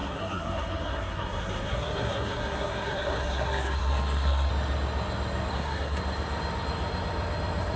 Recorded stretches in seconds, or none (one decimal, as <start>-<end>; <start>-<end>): 4.5-5.5; 6.0-7.8